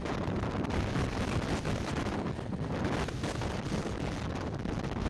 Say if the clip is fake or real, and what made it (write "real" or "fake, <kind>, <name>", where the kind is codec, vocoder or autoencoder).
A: real